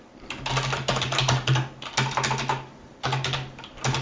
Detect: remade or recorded recorded